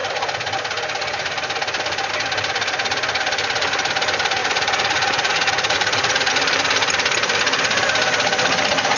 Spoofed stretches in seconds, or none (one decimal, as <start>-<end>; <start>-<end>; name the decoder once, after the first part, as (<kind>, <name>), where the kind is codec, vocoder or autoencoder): 4.4-6.3 (vocoder, Vocos)